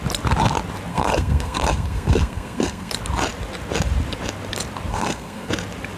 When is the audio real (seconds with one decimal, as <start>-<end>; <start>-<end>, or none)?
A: 0.0-0.9; 2.9-4.9; 5.5-6.0